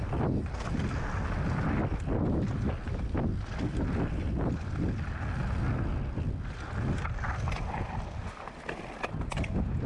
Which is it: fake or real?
real